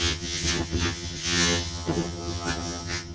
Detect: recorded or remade remade